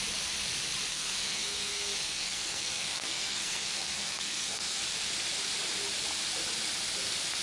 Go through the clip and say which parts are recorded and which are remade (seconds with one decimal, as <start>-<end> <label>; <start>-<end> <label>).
0.0-0.9 recorded; 0.9-4.8 remade; 4.8-7.4 recorded